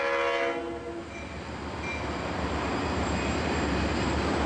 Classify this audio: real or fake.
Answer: real